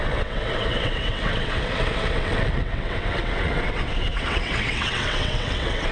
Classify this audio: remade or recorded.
remade